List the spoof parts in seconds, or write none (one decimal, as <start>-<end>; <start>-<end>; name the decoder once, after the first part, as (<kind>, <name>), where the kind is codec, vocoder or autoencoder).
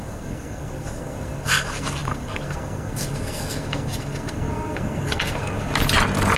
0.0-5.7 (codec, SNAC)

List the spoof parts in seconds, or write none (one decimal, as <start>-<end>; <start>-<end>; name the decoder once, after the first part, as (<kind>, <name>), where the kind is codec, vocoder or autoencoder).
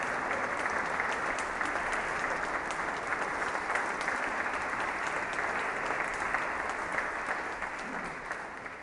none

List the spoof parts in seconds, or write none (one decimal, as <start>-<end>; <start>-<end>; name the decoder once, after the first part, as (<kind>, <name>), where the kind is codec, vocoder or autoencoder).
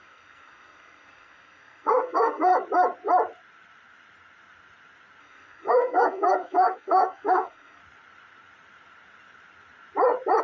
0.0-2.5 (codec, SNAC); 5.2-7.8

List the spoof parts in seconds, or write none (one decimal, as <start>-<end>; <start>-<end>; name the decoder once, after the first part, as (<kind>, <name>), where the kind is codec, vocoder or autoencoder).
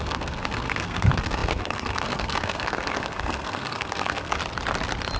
0.0-4.4 (codec, SNAC)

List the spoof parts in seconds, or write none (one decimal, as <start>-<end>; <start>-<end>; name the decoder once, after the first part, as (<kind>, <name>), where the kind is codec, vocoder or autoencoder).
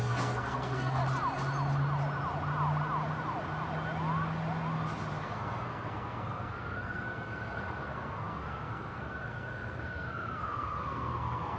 0.0-1.0 (codec, SNAC); 5.2-11.6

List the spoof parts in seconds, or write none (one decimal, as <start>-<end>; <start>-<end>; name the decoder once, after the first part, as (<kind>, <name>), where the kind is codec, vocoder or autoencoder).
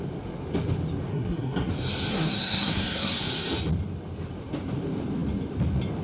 1.1-1.7 (codec, SNAC); 2.1-3.2